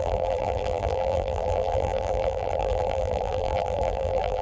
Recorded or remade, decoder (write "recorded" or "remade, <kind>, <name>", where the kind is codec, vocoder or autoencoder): remade, vocoder, BigVGAN v2